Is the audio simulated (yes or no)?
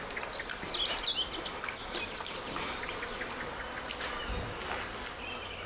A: no